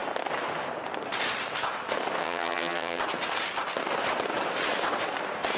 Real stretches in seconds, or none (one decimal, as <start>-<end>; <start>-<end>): 0.0-2.2; 3.0-5.6